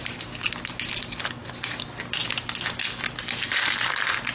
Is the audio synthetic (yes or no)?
no